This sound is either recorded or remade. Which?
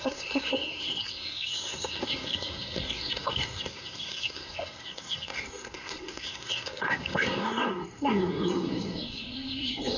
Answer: remade